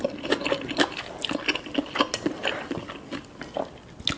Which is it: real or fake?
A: real